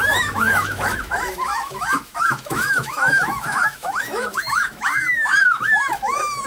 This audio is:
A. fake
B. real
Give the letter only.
A